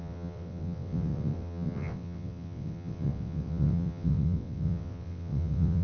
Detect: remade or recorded remade